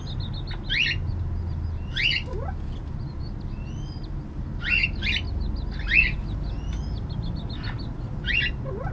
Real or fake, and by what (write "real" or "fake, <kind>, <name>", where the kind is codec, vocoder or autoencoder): real